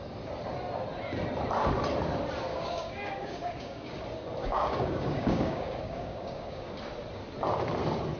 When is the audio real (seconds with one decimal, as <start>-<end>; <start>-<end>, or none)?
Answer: 0.0-2.5; 4.0-4.4; 6.7-8.2